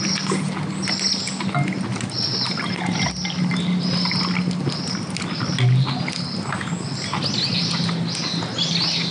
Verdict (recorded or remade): recorded